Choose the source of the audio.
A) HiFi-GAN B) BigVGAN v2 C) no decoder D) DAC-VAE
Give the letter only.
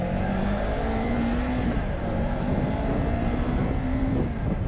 B